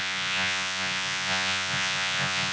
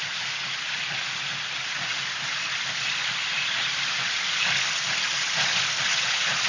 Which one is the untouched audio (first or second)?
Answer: second